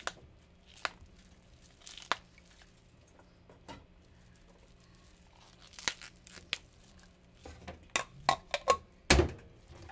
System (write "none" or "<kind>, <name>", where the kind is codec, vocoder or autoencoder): none